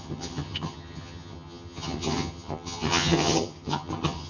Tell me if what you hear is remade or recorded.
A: remade